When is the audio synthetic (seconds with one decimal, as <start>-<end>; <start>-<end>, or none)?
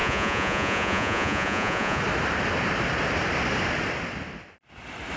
0.0-2.0